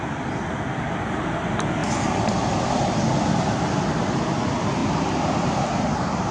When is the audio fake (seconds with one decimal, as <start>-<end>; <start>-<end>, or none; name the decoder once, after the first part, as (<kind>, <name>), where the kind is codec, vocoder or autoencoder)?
none